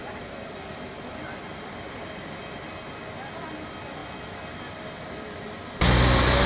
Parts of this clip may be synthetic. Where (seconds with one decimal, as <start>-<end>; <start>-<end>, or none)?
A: none